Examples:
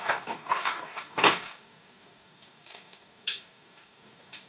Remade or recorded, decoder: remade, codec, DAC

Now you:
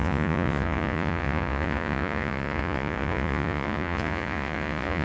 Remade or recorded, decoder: remade, vocoder, Vocos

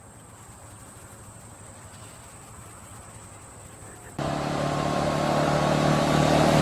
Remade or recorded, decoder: recorded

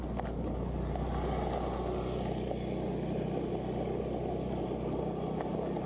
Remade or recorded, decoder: recorded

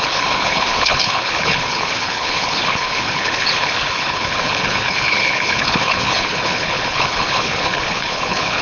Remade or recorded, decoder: remade, codec, HILCodec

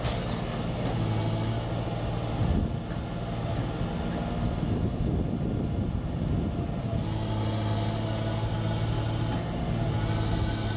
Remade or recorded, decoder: recorded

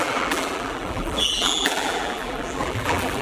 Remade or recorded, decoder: remade, vocoder, BigVGAN v2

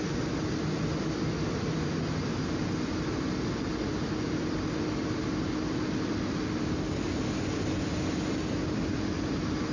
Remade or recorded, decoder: recorded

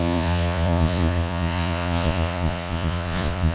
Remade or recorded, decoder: remade, vocoder, Vocos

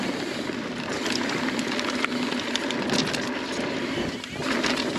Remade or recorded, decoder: recorded